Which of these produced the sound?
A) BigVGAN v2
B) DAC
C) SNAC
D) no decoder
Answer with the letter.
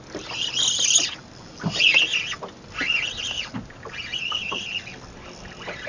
D